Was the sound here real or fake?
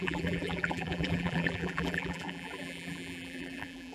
fake